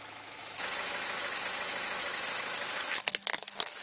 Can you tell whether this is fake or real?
fake